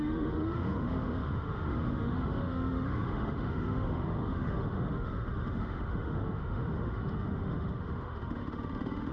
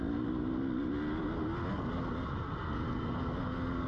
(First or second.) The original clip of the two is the second